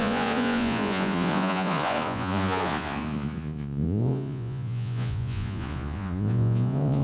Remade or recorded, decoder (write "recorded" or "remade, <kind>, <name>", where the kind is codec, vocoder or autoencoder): remade, vocoder, Vocos